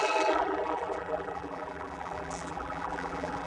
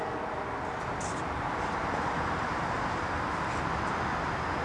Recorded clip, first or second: second